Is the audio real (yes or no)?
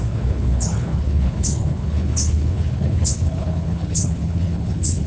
no